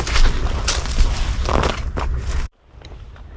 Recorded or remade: recorded